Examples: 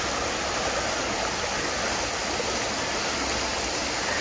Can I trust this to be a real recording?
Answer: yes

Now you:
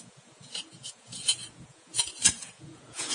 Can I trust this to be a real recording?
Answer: no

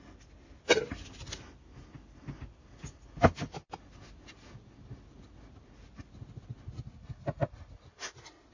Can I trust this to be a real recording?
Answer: yes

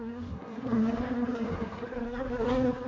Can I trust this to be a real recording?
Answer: no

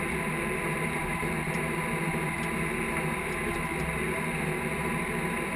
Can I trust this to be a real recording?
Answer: yes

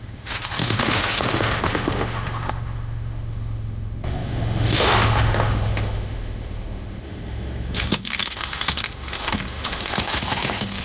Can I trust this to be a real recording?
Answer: no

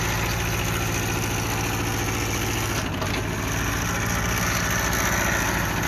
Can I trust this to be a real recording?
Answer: yes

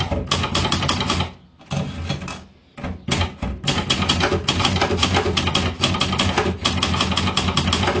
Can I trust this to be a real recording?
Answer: yes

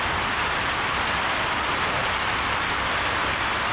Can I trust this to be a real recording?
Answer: yes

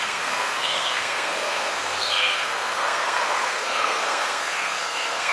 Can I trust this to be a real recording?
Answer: no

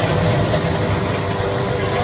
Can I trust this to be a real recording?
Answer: yes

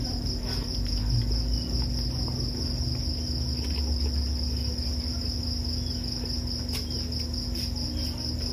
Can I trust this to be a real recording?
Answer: yes